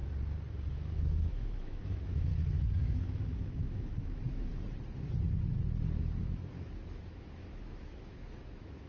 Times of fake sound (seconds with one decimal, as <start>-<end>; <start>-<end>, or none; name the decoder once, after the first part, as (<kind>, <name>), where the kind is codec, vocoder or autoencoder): 0.7-2.3 (autoencoder, DAC-VAE); 2.8-4.5; 6.2-8.9